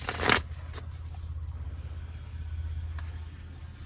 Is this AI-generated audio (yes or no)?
no